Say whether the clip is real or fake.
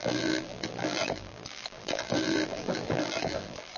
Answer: fake